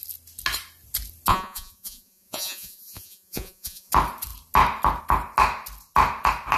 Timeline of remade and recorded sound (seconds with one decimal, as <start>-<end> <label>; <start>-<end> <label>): 0.0-1.3 recorded; 1.3-3.9 remade; 3.9-6.6 recorded